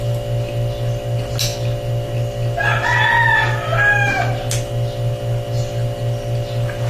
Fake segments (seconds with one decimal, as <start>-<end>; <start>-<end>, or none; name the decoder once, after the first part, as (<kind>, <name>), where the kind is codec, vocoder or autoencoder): none